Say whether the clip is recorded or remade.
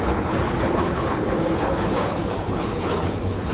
remade